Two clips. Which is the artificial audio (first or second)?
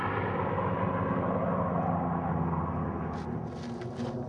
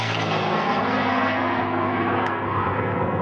second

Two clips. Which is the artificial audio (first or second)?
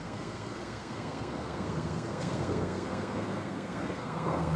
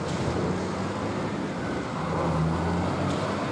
first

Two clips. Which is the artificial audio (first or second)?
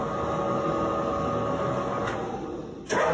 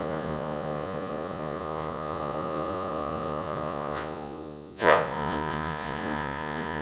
second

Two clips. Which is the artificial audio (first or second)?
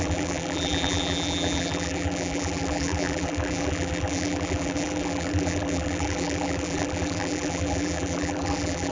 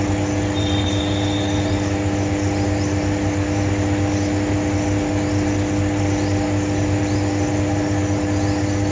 first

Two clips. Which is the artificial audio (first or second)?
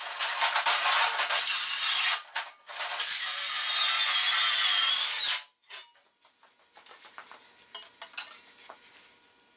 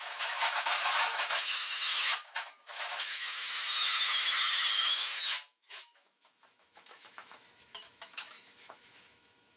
second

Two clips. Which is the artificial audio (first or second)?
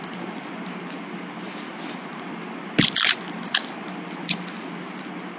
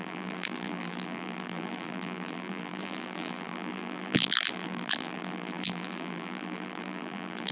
second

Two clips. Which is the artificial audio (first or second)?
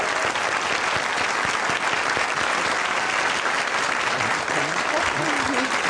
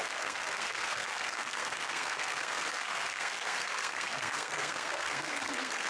second